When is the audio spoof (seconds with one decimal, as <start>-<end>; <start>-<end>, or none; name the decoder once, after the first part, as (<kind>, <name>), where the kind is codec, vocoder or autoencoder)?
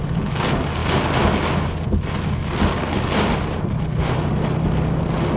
none